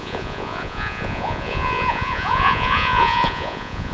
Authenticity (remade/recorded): remade